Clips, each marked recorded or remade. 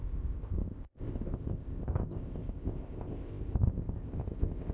remade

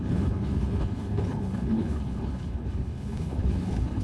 remade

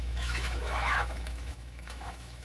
remade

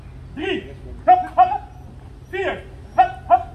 recorded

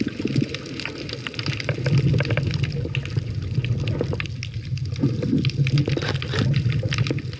recorded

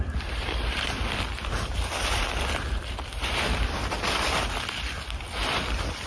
remade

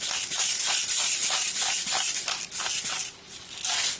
recorded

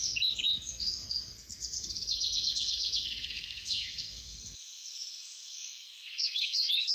remade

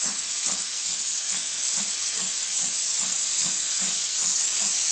remade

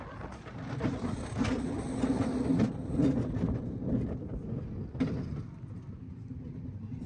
recorded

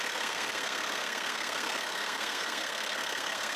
remade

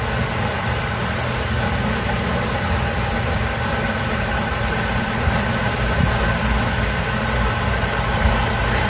remade